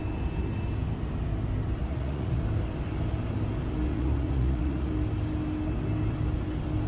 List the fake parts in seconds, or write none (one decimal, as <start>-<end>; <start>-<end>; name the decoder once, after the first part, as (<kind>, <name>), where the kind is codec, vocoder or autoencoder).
1.8-2.4 (vocoder, Vocos); 3.9-4.9